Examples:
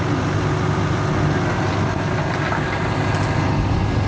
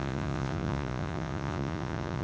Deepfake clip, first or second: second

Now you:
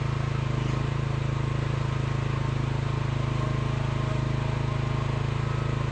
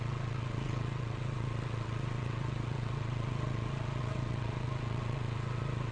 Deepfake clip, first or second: second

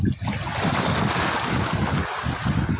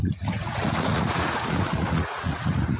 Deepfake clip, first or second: second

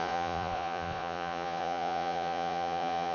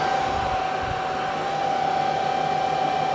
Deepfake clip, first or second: first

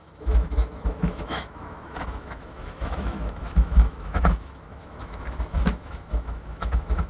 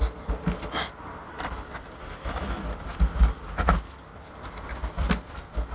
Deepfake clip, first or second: first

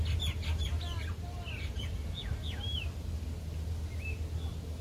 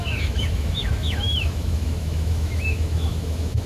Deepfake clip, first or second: second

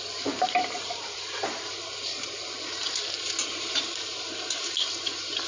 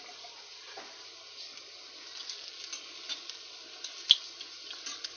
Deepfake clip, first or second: first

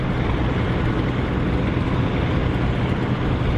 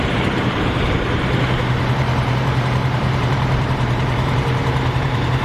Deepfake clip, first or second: second